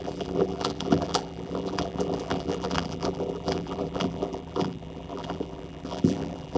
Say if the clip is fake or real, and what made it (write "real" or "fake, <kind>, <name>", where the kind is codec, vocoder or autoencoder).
fake, vocoder, BigVGAN v2